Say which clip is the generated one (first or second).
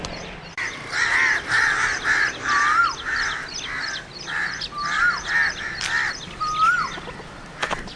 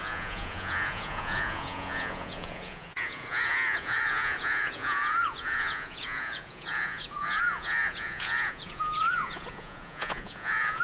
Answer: second